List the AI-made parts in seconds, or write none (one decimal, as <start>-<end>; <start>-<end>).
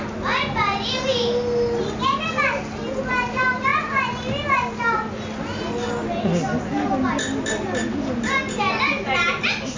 none